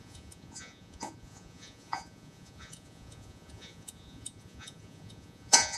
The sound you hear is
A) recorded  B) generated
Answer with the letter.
B